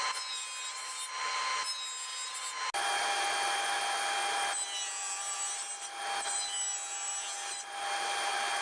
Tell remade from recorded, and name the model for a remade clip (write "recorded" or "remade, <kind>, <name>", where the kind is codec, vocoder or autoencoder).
recorded